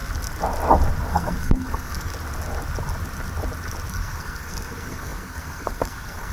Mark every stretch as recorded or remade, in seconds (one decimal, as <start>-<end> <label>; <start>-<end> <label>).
0.0-1.1 recorded; 1.1-2.1 remade; 2.1-3.9 recorded; 3.9-6.3 remade